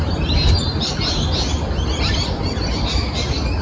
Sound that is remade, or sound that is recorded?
recorded